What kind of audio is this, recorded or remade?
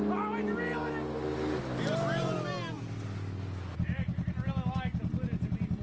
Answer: recorded